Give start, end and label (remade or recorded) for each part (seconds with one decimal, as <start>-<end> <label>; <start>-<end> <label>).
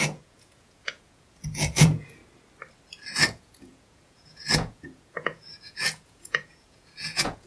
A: 0.0-2.2 remade; 2.2-3.1 recorded; 3.1-7.5 remade